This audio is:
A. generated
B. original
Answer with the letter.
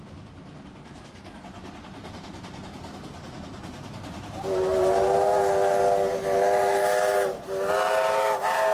B